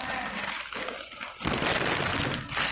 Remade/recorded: recorded